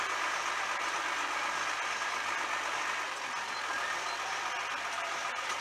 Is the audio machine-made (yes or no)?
no